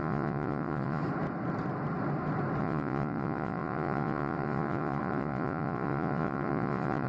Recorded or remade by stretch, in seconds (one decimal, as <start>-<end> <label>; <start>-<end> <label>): 0.0-1.0 remade; 1.0-2.6 recorded; 2.6-7.1 remade

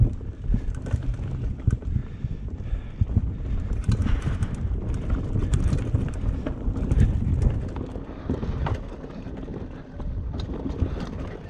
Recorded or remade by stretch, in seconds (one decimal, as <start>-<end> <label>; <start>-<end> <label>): 0.0-11.5 recorded

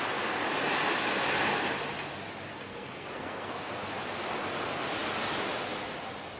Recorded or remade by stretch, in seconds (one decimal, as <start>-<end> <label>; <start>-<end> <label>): 0.0-2.5 recorded; 2.5-3.7 remade; 3.7-6.4 recorded

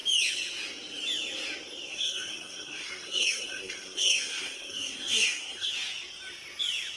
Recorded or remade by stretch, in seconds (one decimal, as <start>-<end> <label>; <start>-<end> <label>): 0.0-1.9 recorded; 1.9-5.7 remade; 5.7-7.0 recorded

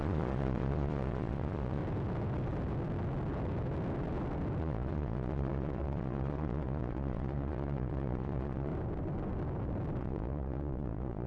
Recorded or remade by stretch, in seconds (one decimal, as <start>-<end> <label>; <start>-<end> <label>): 0.0-1.8 remade; 1.8-4.6 recorded; 4.6-8.7 remade; 8.7-10.0 recorded; 10.0-11.3 remade

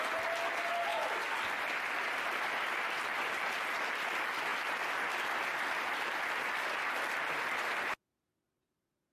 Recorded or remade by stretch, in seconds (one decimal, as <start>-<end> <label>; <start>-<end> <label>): 0.0-9.1 recorded

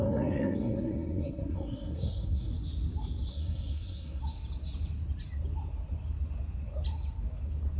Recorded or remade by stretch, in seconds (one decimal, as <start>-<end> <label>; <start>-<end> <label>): 0.0-2.5 remade; 2.5-3.3 recorded; 3.3-4.2 remade; 4.2-7.8 recorded

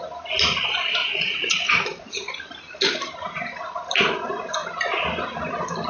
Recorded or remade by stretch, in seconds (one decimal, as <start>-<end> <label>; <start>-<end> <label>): 0.0-1.0 recorded; 1.0-2.3 remade; 2.3-5.9 recorded